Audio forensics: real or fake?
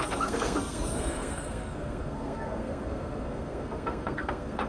fake